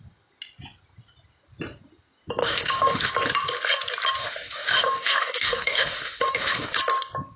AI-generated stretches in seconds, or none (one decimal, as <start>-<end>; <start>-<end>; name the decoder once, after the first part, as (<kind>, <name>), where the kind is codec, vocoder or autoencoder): 2.4-3.1 (autoencoder, DAC-VAE); 4.2-6.8